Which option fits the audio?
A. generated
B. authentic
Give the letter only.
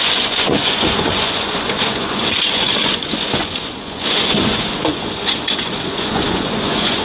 A